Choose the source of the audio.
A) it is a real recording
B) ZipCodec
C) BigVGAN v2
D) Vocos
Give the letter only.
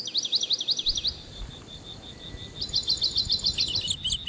A